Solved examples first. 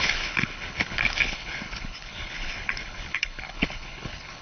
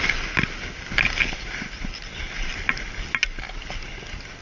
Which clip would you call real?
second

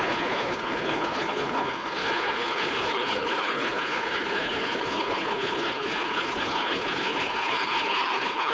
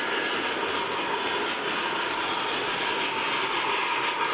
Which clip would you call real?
second